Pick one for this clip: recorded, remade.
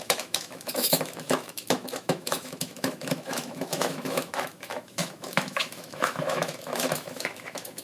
remade